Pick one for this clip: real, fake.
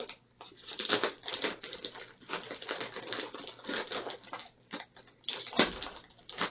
real